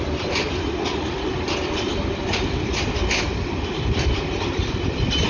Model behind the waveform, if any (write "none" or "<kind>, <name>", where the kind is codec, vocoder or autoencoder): none